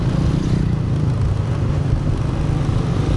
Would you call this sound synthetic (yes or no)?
no